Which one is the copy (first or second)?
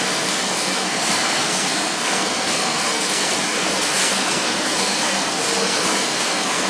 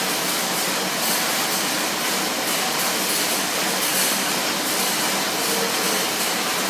first